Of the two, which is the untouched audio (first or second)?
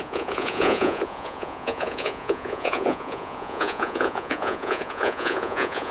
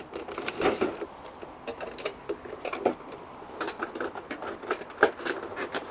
second